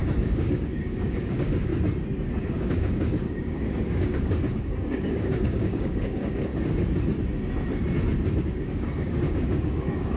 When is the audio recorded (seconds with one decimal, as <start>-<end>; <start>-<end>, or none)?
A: 1.7-2.4; 6.5-8.4

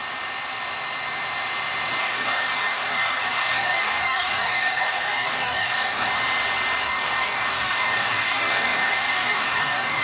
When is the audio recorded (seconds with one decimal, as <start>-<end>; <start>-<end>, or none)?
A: 0.0-2.0; 6.1-6.8

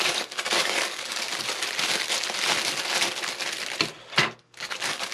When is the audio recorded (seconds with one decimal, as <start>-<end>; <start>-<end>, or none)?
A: 1.3-4.4

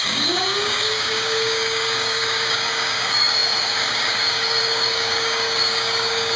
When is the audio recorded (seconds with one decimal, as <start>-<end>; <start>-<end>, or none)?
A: none

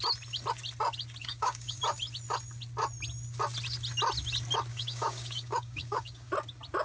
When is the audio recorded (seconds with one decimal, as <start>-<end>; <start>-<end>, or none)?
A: 0.0-1.2; 1.8-4.7; 6.3-6.8

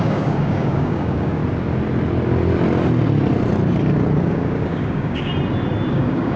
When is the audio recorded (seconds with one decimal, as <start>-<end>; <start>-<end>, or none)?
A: 1.4-4.3; 5.3-5.9

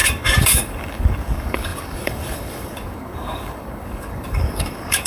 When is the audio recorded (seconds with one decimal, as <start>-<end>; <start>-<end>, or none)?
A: none

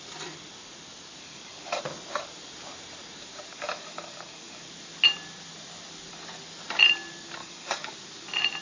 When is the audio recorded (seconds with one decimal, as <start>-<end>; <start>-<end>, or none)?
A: 0.0-1.2; 1.8-3.5; 4.7-7.4; 7.9-8.6